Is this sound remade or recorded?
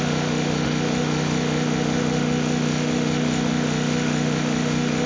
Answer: remade